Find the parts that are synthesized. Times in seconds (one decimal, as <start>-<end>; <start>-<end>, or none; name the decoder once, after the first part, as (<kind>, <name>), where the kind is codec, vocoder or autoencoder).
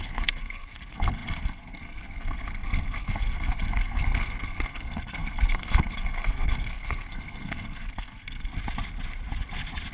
0.0-8.5 (codec, SNAC)